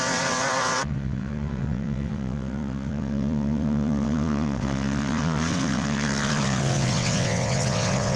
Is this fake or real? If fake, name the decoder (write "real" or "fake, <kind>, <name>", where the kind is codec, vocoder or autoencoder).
fake, vocoder, WaveNeXt